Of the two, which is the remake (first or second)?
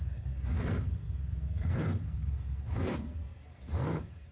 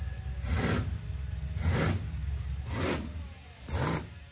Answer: first